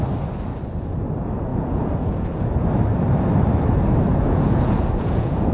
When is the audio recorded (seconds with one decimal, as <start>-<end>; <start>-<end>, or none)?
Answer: 0.0-1.5; 2.4-4.1